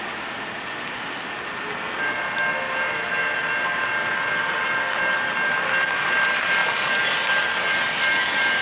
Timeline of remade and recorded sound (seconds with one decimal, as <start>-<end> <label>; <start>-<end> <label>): 0.0-8.6 recorded